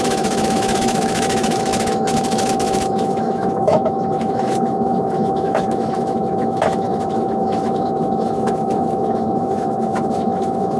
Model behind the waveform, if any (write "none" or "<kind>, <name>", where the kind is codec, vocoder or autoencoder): autoencoder, DAC-VAE